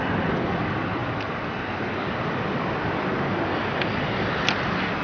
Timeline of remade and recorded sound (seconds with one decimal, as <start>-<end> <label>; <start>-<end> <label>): 0.0-5.0 recorded